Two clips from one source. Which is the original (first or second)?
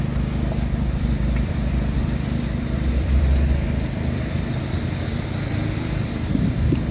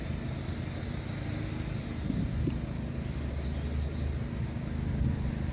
second